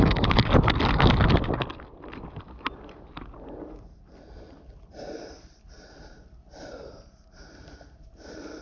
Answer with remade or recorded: recorded